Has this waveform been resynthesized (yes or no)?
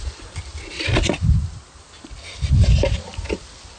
no